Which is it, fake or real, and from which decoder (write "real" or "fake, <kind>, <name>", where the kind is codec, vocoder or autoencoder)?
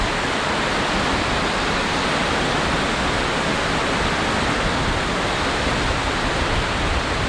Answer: real